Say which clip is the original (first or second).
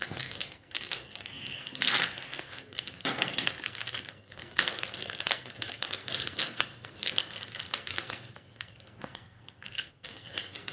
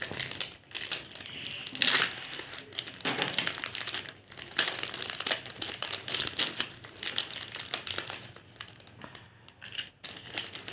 second